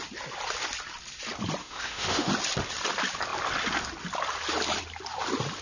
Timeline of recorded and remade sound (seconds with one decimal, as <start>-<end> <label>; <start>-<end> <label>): 0.0-1.6 recorded; 1.6-2.3 remade; 2.3-5.6 recorded